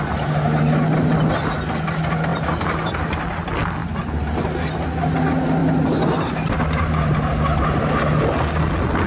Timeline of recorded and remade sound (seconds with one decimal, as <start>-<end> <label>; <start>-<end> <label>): 0.0-3.8 recorded; 3.8-4.4 remade; 4.4-9.1 recorded